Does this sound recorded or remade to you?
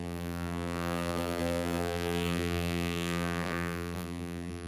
remade